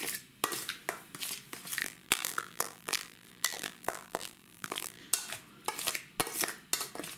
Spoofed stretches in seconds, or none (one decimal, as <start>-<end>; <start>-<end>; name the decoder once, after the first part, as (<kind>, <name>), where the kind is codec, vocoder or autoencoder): 1.8-5.0 (vocoder, BigVGAN v2)